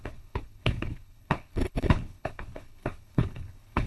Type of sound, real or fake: fake